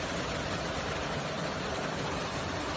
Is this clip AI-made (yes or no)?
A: no